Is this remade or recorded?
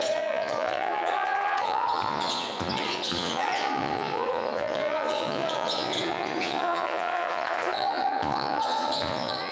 remade